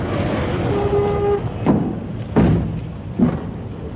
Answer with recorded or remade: recorded